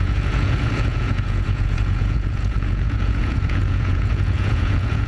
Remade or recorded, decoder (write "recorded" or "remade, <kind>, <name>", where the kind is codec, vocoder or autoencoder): remade, vocoder, Vocos